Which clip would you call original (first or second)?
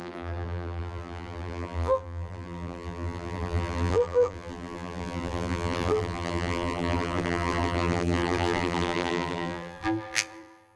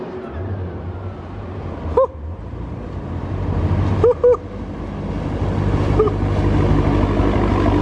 second